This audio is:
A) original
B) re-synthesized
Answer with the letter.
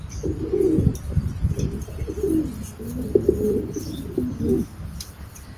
A